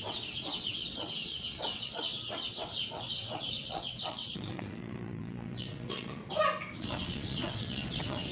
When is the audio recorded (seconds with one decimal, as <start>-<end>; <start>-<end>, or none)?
6.2-6.8